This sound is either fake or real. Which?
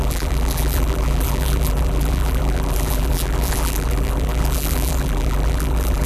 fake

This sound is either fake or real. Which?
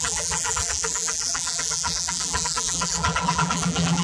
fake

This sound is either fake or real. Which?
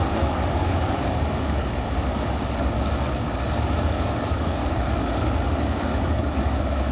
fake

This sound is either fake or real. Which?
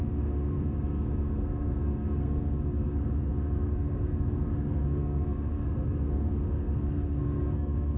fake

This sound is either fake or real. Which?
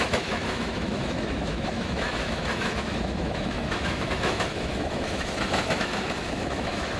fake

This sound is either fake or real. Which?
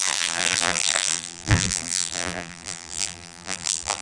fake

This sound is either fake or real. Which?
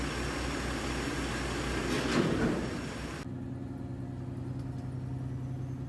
real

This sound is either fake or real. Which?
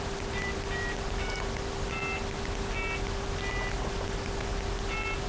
real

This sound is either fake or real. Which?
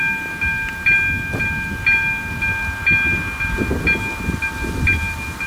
real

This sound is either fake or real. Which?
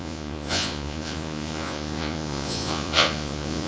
fake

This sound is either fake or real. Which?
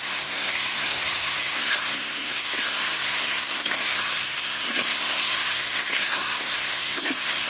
fake